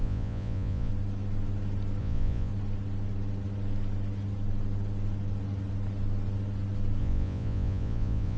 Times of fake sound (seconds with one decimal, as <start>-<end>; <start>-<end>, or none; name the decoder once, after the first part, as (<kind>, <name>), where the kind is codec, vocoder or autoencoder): 0.0-0.9 (vocoder, Vocos); 2.0-2.5; 7.0-8.4